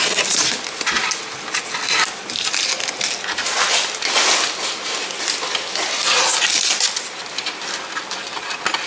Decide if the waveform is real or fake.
real